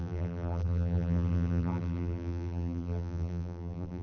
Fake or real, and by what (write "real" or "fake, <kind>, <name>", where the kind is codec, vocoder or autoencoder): fake, vocoder, BigVGAN v2